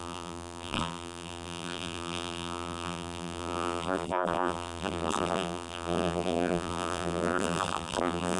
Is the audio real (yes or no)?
no